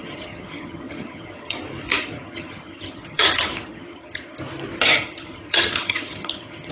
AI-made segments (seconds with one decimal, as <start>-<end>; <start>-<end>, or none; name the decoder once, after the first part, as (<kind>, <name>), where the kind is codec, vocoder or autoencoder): 0.0-1.6 (vocoder, HiFi-GAN); 2.0-4.4; 4.9-6.7